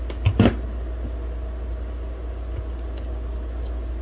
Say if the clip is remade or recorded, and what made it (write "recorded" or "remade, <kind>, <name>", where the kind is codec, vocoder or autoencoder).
recorded